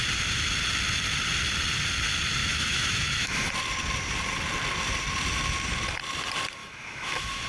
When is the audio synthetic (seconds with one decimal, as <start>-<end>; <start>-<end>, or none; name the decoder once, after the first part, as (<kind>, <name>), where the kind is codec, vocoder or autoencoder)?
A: 2.4-3.5 (autoencoder, DAC-VAE); 6.6-7.5